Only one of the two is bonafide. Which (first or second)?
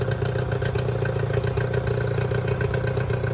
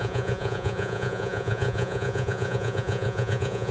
first